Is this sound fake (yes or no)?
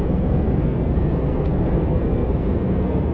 yes